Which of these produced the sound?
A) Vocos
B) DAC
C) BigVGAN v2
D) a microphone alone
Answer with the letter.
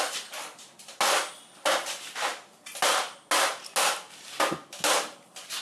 D